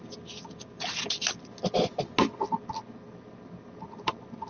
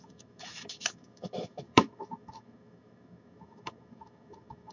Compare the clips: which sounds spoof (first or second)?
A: second